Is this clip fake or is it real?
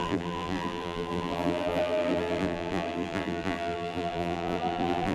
fake